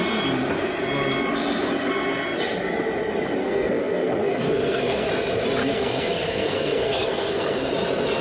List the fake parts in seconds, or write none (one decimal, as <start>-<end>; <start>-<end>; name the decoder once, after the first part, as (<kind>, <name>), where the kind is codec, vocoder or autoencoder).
3.4-5.1 (codec, SNAC); 5.6-7.7